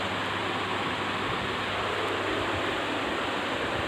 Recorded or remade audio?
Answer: recorded